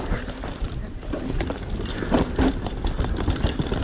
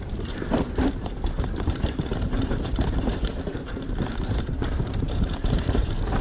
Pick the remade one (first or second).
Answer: second